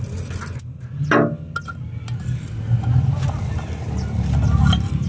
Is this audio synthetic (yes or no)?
no